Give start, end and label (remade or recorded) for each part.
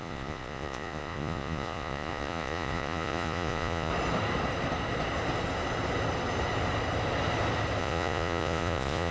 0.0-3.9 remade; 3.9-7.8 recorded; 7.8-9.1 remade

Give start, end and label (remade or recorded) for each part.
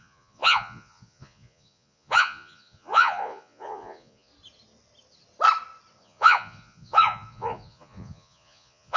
0.0-4.3 remade; 4.3-6.0 recorded; 6.0-9.0 remade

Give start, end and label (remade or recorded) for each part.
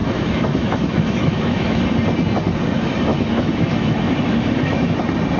0.0-1.8 remade; 1.8-3.1 recorded; 3.1-5.0 remade; 5.0-5.4 recorded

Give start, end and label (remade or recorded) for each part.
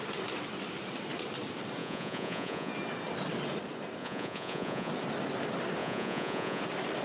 0.0-1.8 recorded; 1.8-2.7 remade; 2.7-4.0 recorded; 4.0-4.9 remade; 4.9-5.8 recorded; 5.8-6.6 remade; 6.6-7.0 recorded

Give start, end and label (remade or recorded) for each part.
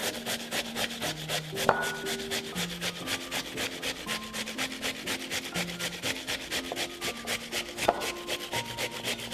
0.0-9.3 recorded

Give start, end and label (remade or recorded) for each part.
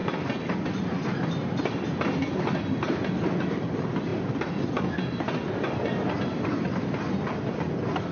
0.0-8.1 recorded